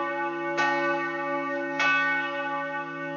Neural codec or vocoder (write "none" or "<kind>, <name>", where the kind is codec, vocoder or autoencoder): none